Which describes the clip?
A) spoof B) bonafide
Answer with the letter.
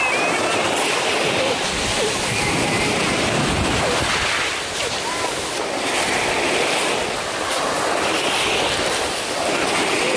B